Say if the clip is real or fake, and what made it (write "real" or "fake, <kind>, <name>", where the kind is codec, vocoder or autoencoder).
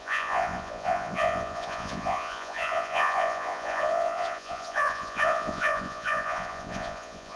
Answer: fake, vocoder, Vocos